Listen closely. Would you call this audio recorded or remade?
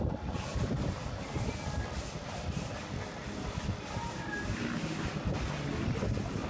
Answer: recorded